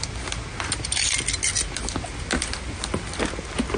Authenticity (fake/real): real